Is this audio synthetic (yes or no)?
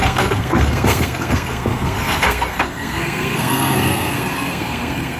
yes